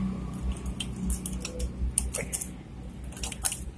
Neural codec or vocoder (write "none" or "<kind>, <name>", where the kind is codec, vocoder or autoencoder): none